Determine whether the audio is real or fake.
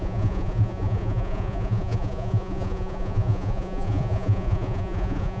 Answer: fake